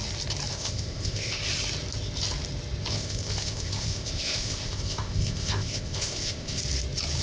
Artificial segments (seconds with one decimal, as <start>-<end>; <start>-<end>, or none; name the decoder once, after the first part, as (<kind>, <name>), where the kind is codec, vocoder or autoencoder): 0.5-1.4 (codec, ZipCodec); 2.9-6.6